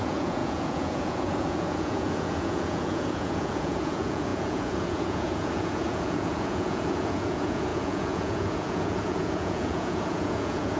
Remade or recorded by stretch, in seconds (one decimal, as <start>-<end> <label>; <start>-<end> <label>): 0.0-10.8 remade